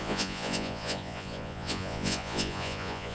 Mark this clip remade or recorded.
remade